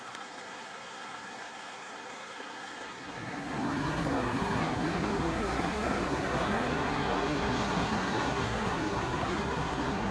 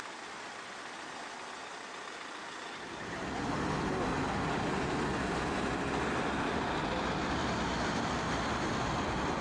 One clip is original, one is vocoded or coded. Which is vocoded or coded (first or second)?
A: first